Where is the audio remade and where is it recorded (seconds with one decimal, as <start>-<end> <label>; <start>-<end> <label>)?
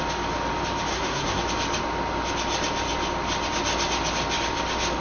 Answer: 0.0-0.9 recorded; 0.9-1.4 remade; 1.4-5.0 recorded